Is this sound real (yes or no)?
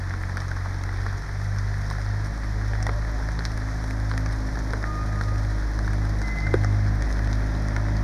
yes